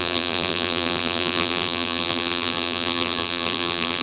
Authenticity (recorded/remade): remade